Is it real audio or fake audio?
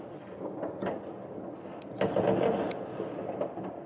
real